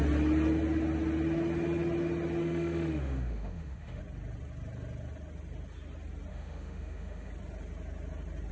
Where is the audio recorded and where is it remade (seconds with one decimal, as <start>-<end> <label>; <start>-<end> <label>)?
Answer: 0.0-2.4 recorded; 2.4-4.0 remade; 4.0-6.3 recorded; 6.3-7.3 remade; 7.3-8.5 recorded